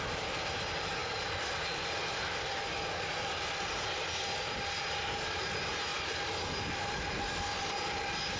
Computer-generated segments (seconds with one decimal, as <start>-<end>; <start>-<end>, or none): 1.0-4.9; 5.9-6.5